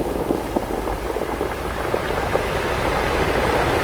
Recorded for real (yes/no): yes